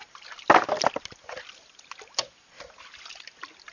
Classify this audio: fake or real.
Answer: real